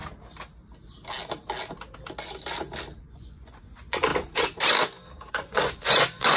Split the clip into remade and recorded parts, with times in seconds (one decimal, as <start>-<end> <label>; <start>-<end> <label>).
0.0-3.0 recorded; 3.0-4.1 remade; 4.1-5.3 recorded; 5.3-6.4 remade